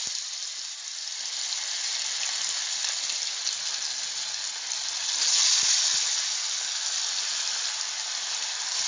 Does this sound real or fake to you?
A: real